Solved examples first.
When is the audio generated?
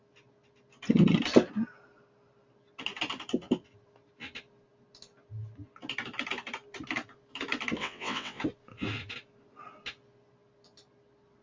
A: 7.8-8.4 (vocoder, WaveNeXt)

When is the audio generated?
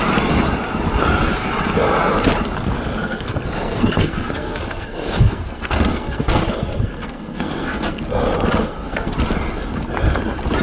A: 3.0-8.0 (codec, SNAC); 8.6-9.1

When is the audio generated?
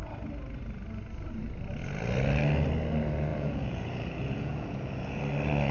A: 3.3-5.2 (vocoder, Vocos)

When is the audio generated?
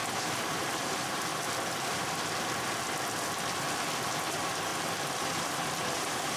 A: 0.0-1.3 (vocoder, BigVGAN v2); 4.1-4.7; 5.2-6.4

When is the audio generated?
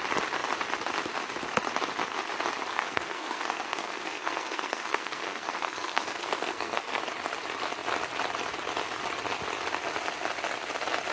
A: 2.7-7.0 (codec, SNAC)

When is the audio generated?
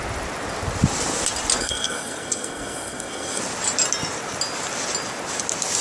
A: 1.6-3.4 (codec, SNAC)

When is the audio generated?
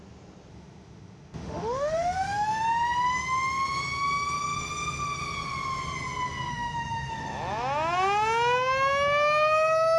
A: 0.5-2.6 (autoencoder, DAC-VAE); 6.5-7.1